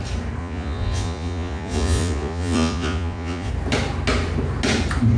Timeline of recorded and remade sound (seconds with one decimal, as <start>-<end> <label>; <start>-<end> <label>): 0.0-0.4 recorded; 0.4-3.5 remade; 3.5-5.2 recorded